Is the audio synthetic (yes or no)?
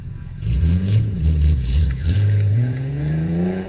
yes